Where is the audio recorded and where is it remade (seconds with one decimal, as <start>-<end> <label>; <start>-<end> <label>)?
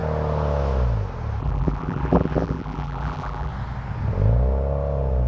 0.0-1.4 recorded; 1.4-3.5 remade; 3.5-5.3 recorded